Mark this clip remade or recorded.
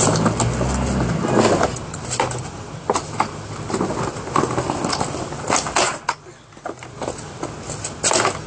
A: recorded